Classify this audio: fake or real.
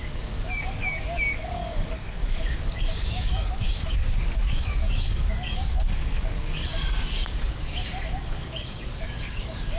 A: fake